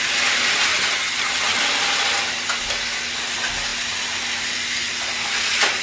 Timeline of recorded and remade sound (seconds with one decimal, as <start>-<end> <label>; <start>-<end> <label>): 0.0-0.7 recorded; 0.7-1.6 remade; 1.6-5.8 recorded